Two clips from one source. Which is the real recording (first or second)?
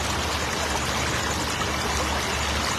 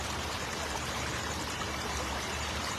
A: first